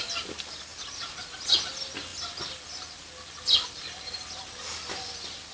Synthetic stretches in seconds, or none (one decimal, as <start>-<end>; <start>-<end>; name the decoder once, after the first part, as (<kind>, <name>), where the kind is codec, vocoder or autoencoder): none